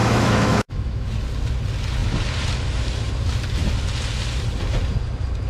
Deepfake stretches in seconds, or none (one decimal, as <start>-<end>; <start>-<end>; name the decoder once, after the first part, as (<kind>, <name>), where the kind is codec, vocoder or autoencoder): 0.0-1.1 (autoencoder, DAC-VAE)